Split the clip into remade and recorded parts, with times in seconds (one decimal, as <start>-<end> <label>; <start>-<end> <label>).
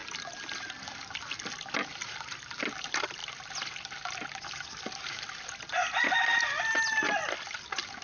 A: 0.0-8.0 recorded